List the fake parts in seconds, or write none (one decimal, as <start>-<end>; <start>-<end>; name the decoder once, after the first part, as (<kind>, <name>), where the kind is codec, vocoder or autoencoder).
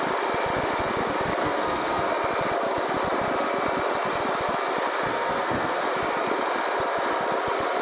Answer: 1.4-2.1 (codec, SNAC); 5.1-5.8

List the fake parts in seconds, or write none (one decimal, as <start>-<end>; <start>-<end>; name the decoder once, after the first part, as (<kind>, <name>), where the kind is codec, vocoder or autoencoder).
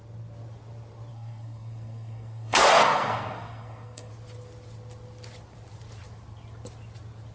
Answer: 1.1-4.1 (codec, SNAC)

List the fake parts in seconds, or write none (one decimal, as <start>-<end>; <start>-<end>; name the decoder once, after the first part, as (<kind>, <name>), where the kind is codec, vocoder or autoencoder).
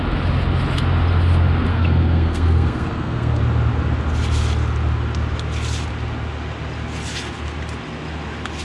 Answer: 1.7-3.4 (codec, SNAC)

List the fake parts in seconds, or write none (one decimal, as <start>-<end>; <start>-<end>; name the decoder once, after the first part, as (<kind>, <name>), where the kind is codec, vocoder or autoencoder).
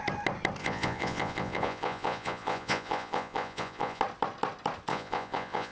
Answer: 0.6-4.0 (vocoder, Vocos); 4.9-5.7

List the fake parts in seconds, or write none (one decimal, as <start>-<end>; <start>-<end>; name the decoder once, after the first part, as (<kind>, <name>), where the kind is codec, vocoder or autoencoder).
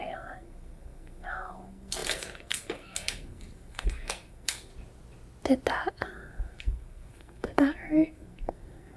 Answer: 0.0-4.7 (codec, SNAC); 5.9-9.0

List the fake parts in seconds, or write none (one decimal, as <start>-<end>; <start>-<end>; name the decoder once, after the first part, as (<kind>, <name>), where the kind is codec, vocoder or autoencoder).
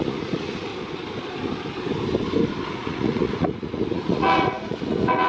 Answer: 0.0-0.7 (vocoder, Vocos); 2.7-5.3